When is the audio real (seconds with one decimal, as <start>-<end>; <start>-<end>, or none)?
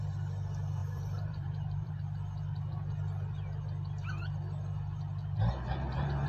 0.0-0.8; 1.9-6.3